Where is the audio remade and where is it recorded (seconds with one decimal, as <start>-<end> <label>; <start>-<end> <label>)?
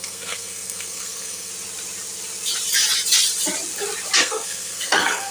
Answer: 0.0-1.5 remade; 1.5-4.2 recorded; 4.2-5.3 remade